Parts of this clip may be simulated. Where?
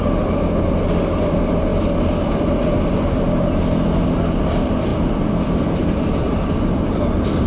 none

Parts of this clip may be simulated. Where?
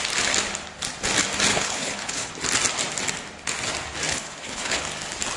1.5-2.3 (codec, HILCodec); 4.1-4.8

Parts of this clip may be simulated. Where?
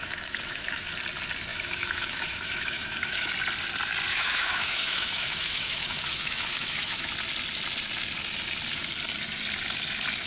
0.0-0.9 (autoencoder, DAC-VAE); 1.5-3.3; 4.1-7.1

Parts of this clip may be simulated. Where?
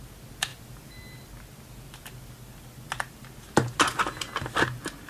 none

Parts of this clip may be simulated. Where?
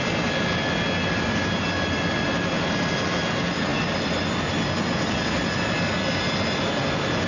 none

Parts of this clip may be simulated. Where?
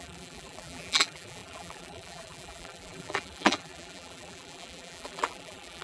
0.0-5.8 (vocoder, BigVGAN v2)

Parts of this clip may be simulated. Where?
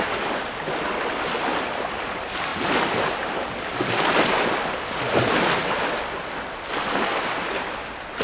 none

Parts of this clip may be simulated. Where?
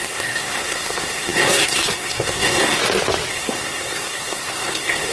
0.0-2.8 (codec, SNAC); 3.3-5.1